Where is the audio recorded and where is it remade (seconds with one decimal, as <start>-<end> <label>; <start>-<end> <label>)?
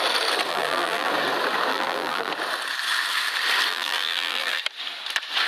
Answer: 0.0-0.5 recorded; 0.5-1.1 remade; 1.1-1.7 recorded; 1.7-2.3 remade; 2.3-3.7 recorded; 3.7-4.6 remade; 4.6-5.5 recorded